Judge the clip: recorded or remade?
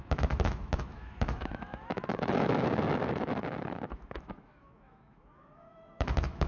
remade